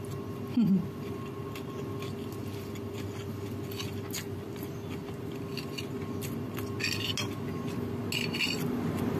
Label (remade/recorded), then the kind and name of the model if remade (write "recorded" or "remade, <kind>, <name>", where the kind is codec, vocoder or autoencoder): recorded